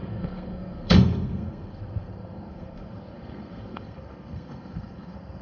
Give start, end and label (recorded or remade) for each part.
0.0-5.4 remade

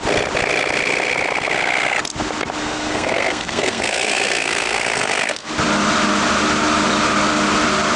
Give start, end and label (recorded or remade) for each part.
0.0-2.6 recorded; 2.6-5.5 remade; 5.5-8.0 recorded

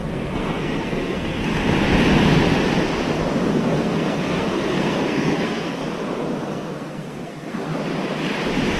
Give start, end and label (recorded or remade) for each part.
0.0-1.5 remade; 1.5-3.5 recorded; 3.5-5.8 remade; 5.8-6.4 recorded; 6.4-7.7 remade; 7.7-8.8 recorded

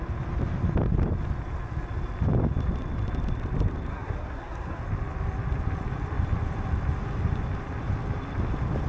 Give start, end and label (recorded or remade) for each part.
0.0-3.9 recorded; 3.9-4.8 remade; 4.8-8.9 recorded

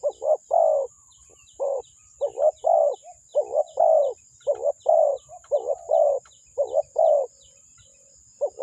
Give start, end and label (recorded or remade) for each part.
0.0-8.6 recorded